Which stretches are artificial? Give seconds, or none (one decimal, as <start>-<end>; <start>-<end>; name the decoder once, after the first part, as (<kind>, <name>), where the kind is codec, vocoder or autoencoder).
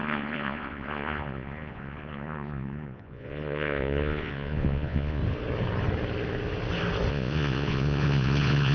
0.0-5.2 (vocoder, Vocos); 7.1-8.7